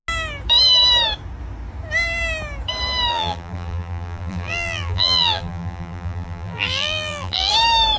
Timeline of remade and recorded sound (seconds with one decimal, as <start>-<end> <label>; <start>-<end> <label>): 0.0-3.1 recorded; 3.1-7.5 remade; 7.5-8.0 recorded